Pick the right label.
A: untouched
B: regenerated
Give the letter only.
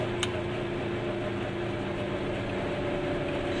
A